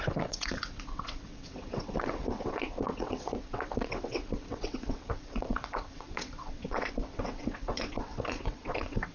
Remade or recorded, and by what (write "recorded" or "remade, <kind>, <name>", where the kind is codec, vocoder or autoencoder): remade, vocoder, WaveNeXt